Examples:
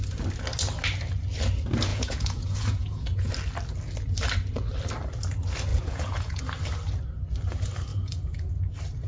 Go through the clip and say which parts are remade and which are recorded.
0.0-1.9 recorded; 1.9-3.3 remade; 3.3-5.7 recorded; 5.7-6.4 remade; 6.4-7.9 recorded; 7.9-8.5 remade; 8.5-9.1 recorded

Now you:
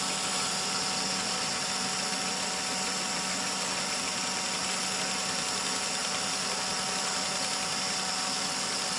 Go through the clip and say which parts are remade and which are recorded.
0.0-9.0 recorded